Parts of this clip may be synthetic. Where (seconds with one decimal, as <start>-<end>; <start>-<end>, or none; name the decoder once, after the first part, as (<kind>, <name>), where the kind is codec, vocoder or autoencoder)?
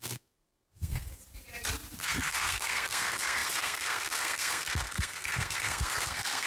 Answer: 0.0-1.2 (codec, SNAC); 2.0-6.5